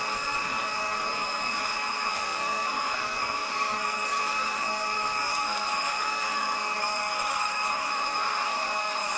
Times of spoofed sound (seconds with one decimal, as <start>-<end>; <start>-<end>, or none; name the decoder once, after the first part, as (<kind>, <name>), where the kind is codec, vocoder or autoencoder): 0.0-9.2 (codec, SNAC)